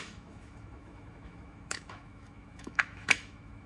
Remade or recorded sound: remade